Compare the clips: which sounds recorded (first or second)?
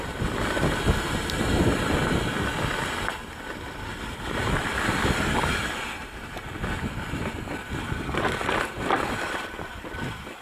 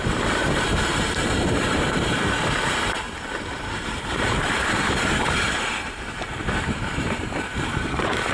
first